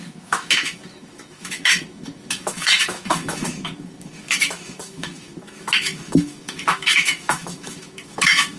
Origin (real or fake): fake